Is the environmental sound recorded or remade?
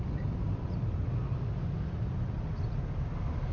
recorded